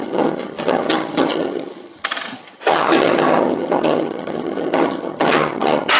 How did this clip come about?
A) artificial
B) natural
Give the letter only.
A